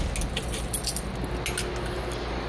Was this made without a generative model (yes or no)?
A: yes